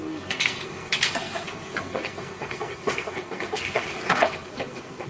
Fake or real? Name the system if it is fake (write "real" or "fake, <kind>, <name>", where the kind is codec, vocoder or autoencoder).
fake, codec, SNAC